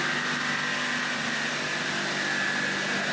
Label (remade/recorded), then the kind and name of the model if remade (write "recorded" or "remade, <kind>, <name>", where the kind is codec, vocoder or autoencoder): recorded